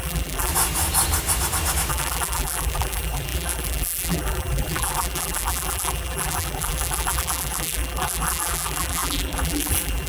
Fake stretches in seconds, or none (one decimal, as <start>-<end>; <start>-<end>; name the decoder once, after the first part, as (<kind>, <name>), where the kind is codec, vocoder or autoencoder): 0.0-0.5 (vocoder, BigVGAN v2); 1.9-10.1